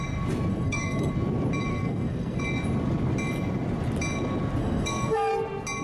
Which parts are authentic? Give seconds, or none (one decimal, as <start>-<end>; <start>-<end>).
0.0-0.5; 1.1-1.7; 2.4-4.6; 5.3-5.8